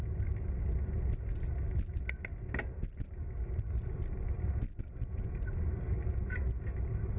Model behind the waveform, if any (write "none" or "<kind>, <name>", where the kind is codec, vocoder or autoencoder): none